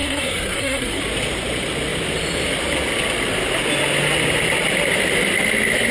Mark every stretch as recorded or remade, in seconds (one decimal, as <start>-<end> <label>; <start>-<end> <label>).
0.0-1.0 remade; 1.0-5.9 recorded